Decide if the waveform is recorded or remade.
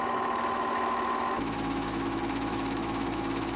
remade